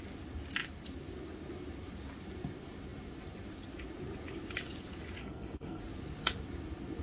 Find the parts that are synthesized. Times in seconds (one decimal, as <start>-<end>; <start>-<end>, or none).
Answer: 5.2-5.8